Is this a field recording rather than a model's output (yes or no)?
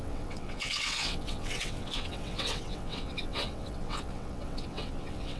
no